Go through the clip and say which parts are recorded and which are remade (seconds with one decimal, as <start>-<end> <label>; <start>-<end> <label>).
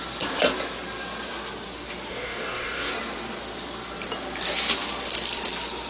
0.0-2.1 recorded; 2.1-2.9 remade; 2.9-5.9 recorded